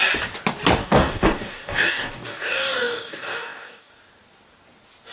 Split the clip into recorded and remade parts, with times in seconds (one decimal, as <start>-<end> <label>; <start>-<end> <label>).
0.0-0.8 recorded; 0.8-3.9 remade; 3.9-5.1 recorded